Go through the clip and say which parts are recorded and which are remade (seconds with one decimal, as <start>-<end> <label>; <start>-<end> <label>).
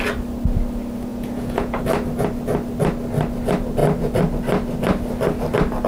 0.0-1.1 recorded; 1.1-1.8 remade; 1.8-5.9 recorded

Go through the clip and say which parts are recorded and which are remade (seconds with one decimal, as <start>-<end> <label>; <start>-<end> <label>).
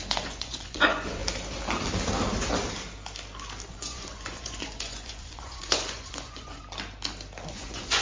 0.0-1.2 remade; 1.2-3.7 recorded; 3.7-6.6 remade; 6.6-7.5 recorded; 7.5-8.0 remade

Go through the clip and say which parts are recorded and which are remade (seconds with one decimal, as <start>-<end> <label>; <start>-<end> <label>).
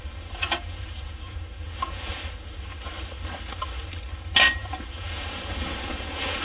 0.0-0.4 recorded; 0.4-2.1 remade; 2.1-4.6 recorded; 4.6-6.4 remade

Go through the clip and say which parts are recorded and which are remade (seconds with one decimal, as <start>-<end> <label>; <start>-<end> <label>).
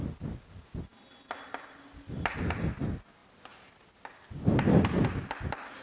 0.0-5.8 recorded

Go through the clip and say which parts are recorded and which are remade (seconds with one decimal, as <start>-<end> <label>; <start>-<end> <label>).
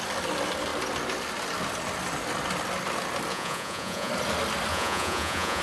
0.0-3.3 recorded; 3.3-4.1 remade; 4.1-4.7 recorded; 4.7-5.6 remade